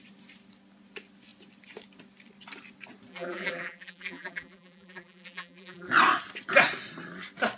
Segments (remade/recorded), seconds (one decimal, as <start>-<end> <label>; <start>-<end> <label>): 0.0-3.1 recorded; 3.1-5.9 remade; 5.9-7.6 recorded